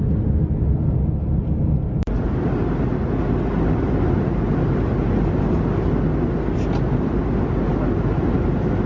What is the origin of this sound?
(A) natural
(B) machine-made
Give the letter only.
A